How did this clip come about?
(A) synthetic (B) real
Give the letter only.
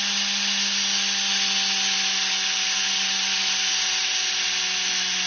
B